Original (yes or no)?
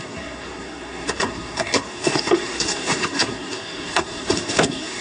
no